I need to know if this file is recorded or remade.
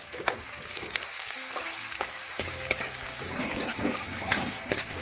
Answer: remade